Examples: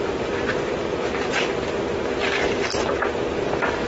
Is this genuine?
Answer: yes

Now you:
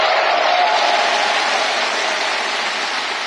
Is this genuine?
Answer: yes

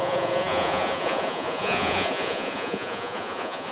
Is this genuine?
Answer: no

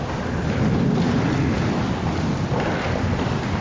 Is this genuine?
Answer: yes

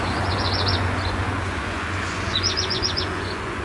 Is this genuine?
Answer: no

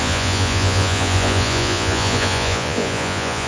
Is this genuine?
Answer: no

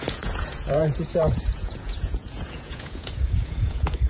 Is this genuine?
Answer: no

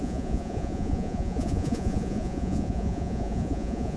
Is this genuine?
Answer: no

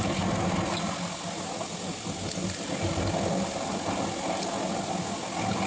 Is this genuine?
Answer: yes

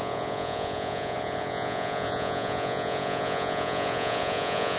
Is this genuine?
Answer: no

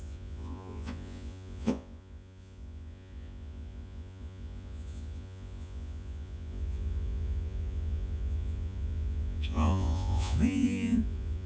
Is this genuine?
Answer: no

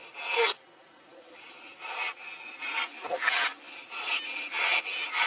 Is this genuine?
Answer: yes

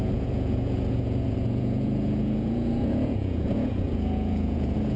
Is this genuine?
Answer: no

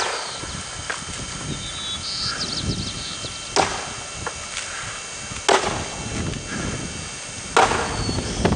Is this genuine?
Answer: yes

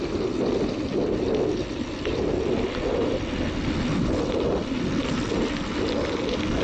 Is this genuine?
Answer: yes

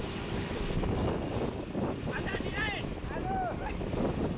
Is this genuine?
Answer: yes